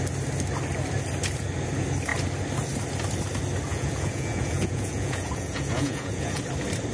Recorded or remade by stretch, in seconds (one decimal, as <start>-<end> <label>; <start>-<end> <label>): 0.0-3.7 recorded; 3.7-6.4 remade; 6.4-6.9 recorded